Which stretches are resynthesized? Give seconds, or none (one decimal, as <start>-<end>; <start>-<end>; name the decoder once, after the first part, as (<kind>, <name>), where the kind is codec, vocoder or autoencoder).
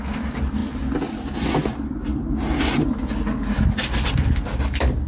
none